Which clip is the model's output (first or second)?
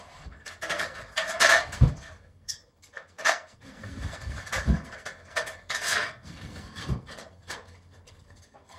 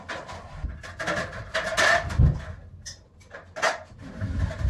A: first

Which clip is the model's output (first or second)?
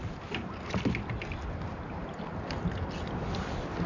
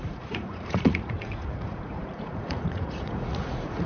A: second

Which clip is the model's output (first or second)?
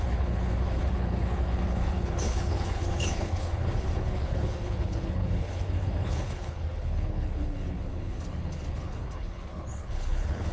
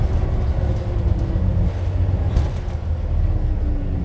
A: first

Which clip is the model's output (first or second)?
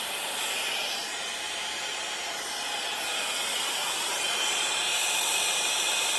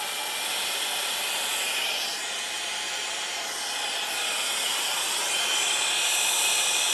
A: first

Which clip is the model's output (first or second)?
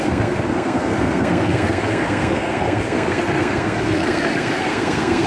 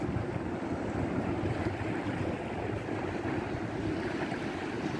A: first